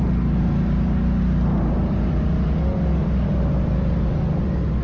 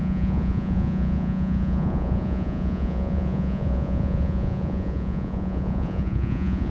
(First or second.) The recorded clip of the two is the first